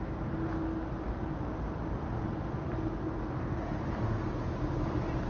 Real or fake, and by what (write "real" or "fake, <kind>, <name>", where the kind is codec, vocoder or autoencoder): real